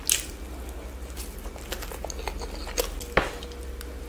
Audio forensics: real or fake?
real